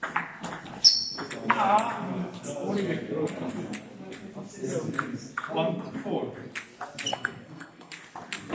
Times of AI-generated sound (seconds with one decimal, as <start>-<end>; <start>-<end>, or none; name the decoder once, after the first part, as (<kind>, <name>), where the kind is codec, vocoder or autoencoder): 7.1-7.9 (codec, SNAC)